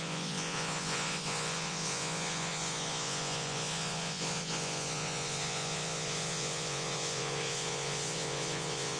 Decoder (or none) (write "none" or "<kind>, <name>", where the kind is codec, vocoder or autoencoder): vocoder, Vocos